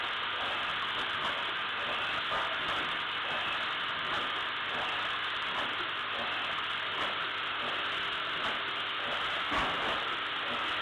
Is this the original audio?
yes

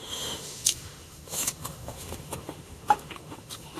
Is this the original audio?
no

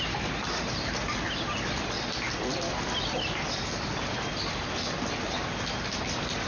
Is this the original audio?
yes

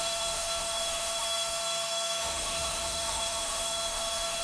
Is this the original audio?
no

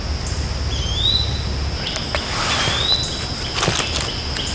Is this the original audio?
yes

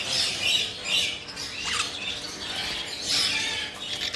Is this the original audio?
yes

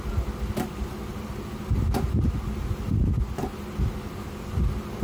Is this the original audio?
yes